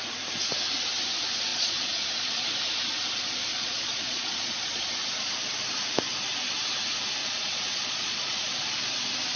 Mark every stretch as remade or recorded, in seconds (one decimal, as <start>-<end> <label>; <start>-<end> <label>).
0.0-1.5 recorded; 1.5-2.6 remade; 2.6-3.5 recorded; 3.5-4.9 remade; 4.9-7.2 recorded; 7.2-8.7 remade; 8.7-9.4 recorded

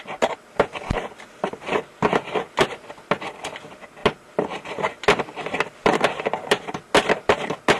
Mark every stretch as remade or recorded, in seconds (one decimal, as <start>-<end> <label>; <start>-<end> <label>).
0.0-7.8 recorded

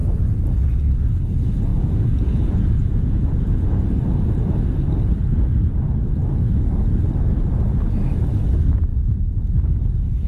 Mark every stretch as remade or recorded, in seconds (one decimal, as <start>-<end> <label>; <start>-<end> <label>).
0.0-1.7 recorded; 1.7-3.8 remade; 3.8-8.9 recorded; 8.9-9.4 remade; 9.4-10.3 recorded

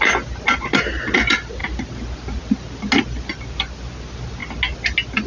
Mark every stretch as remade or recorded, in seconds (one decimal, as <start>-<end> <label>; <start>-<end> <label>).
0.0-5.3 recorded

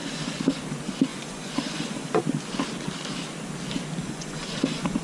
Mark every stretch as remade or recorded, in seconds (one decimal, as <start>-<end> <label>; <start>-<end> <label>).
0.0-0.6 remade; 0.6-1.1 recorded; 1.1-2.2 remade; 2.2-4.0 recorded; 4.0-5.0 remade